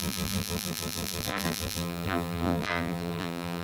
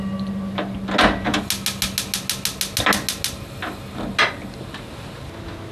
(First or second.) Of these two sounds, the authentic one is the second